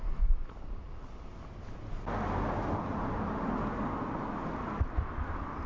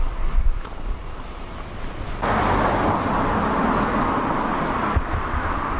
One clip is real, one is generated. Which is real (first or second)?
first